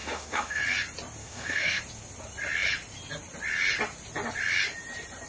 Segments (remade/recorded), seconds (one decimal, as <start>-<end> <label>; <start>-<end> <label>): 0.0-0.6 remade; 0.6-1.2 recorded; 1.2-1.8 remade; 1.8-5.3 recorded